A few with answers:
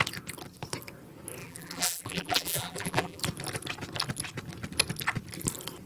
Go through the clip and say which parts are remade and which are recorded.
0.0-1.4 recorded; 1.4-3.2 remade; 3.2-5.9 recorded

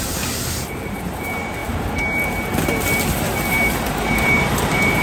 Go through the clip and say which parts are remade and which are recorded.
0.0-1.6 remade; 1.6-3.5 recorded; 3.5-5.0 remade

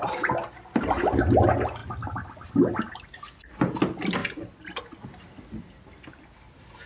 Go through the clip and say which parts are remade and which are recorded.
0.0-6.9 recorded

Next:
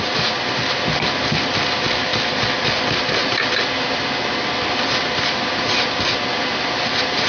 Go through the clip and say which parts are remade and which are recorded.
0.0-7.3 recorded

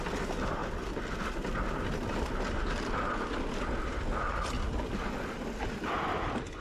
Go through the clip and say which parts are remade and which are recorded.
0.0-6.6 recorded

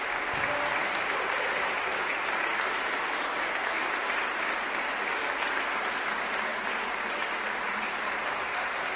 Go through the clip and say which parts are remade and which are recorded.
0.0-0.8 recorded; 0.8-4.5 remade; 4.5-6.5 recorded; 6.5-8.4 remade; 8.4-9.0 recorded